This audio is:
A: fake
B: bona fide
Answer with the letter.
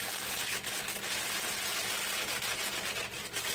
B